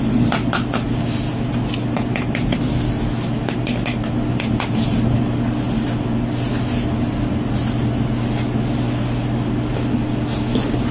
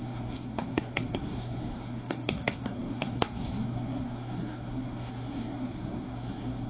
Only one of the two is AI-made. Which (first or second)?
second